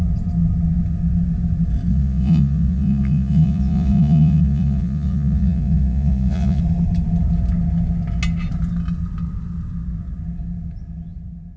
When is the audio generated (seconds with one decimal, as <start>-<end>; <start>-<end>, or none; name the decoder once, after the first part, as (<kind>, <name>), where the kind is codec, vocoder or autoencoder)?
1.9-6.6 (vocoder, Vocos)